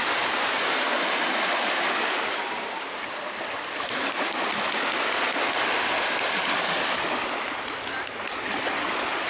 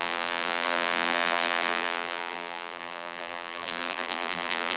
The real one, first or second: first